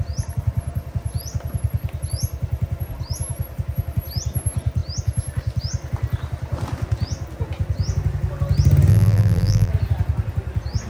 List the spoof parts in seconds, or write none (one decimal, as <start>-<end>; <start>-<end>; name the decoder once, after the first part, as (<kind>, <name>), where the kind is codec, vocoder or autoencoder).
8.9-9.7 (vocoder, BigVGAN v2)